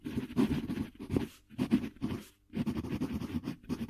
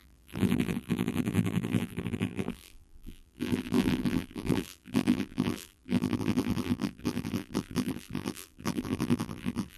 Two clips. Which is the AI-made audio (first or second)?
second